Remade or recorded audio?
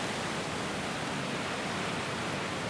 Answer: recorded